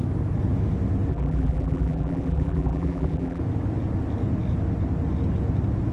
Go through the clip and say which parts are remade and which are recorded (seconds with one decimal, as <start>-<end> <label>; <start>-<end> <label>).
0.0-1.1 recorded; 1.1-3.4 remade; 3.4-5.9 recorded